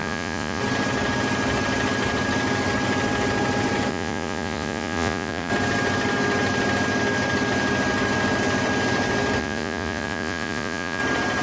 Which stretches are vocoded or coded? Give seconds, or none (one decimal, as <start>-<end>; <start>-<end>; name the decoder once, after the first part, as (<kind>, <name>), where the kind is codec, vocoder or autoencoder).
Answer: 0.0-0.6 (vocoder, Vocos); 3.9-5.5; 9.4-11.0